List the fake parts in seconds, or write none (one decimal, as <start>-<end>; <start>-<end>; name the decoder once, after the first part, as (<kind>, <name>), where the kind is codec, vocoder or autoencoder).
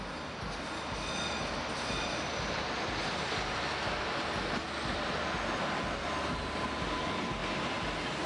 none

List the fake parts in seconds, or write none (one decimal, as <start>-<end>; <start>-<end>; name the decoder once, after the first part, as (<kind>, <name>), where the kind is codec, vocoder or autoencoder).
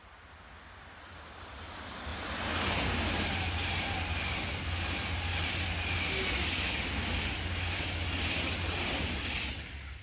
none